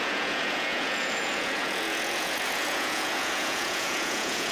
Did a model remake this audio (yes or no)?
yes